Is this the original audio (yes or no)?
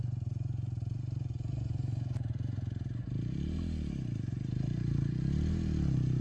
no